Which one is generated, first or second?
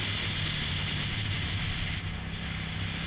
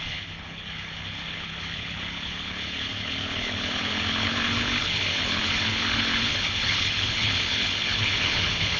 second